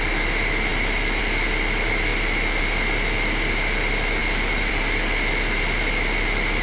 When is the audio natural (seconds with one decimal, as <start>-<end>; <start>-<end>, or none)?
0.0-6.6